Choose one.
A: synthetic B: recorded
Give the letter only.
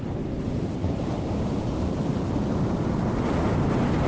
B